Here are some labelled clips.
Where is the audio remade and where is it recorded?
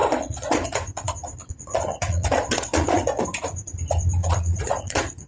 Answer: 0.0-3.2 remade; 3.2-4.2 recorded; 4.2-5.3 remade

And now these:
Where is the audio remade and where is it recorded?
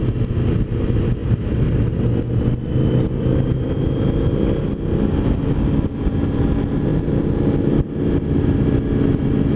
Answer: 0.0-9.6 recorded